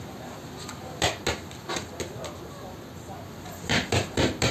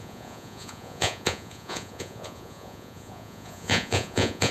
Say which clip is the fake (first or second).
second